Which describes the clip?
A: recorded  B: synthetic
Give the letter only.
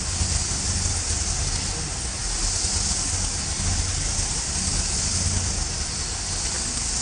A